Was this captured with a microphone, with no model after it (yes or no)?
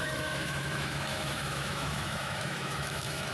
no